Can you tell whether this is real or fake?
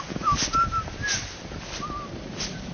real